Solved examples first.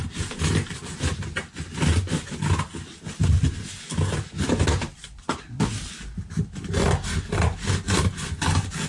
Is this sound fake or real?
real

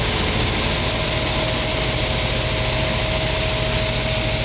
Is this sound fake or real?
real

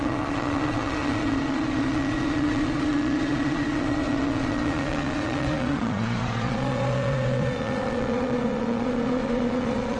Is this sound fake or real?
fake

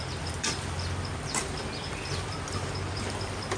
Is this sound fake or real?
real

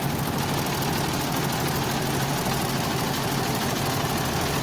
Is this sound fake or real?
real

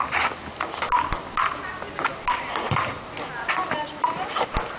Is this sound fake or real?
real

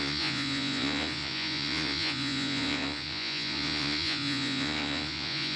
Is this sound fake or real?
fake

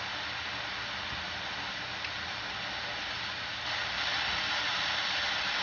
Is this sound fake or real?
real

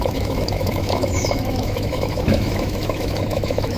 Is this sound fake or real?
fake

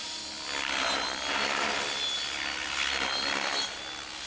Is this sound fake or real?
real